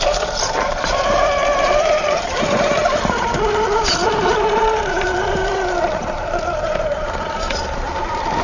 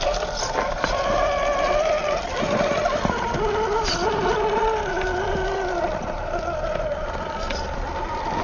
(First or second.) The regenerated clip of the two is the first